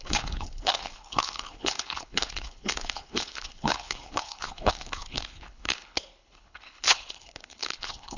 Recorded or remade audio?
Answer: remade